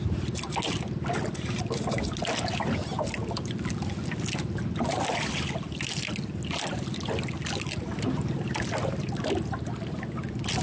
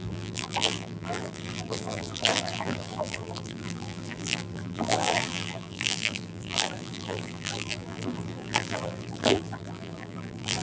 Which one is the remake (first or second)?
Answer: second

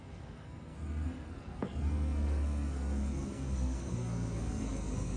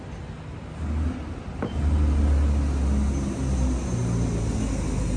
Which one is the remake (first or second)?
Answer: first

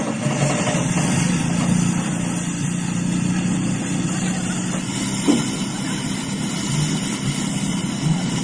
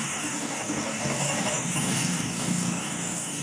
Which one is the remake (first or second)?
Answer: second